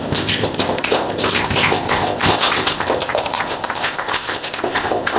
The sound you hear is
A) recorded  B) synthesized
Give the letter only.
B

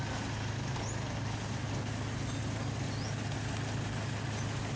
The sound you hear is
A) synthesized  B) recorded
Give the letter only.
B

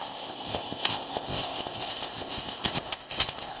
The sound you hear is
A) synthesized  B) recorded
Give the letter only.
A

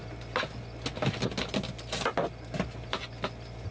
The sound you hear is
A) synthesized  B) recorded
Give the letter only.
B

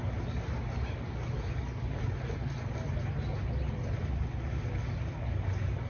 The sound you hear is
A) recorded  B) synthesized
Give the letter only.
A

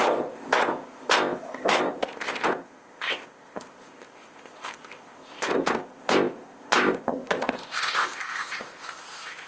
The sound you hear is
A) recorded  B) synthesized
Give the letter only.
B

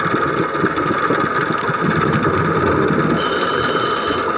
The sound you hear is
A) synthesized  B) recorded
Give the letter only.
B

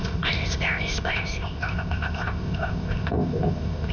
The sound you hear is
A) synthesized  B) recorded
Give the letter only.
A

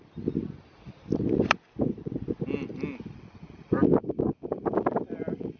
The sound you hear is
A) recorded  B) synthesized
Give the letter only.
A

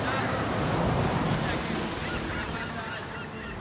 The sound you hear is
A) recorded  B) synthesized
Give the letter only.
A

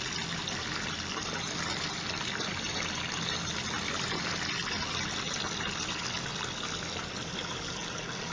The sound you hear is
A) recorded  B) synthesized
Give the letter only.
A